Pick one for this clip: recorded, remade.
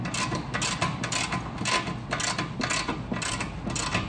recorded